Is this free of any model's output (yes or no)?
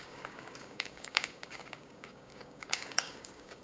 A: no